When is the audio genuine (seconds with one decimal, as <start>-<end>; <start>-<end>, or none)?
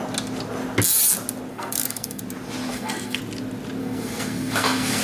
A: 0.0-1.5; 2.2-2.7; 3.2-3.8